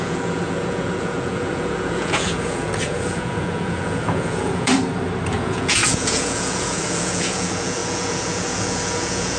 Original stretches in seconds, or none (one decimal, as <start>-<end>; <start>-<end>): 4.7-5.3

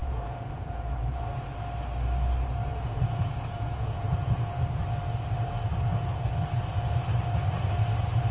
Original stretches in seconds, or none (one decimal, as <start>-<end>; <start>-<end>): 1.2-2.7; 4.5-5.9; 6.4-8.3